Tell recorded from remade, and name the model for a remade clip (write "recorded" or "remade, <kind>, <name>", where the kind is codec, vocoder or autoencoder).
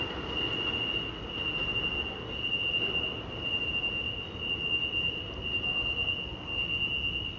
recorded